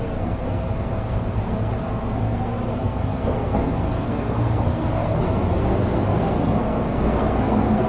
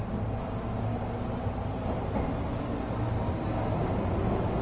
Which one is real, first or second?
second